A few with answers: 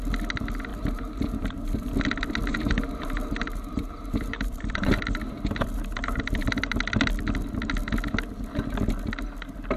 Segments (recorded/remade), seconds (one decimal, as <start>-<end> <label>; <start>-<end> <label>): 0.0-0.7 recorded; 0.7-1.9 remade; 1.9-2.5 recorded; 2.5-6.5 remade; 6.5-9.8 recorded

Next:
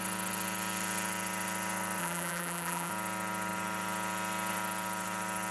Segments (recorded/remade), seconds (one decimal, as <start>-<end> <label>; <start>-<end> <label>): 0.0-2.0 recorded; 2.0-2.9 remade; 2.9-5.5 recorded

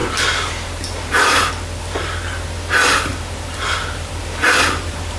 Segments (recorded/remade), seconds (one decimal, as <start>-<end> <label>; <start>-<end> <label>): 0.0-1.5 remade; 1.5-3.1 recorded; 3.1-3.6 remade; 3.6-4.2 recorded; 4.2-5.2 remade